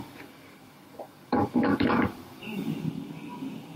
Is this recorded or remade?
remade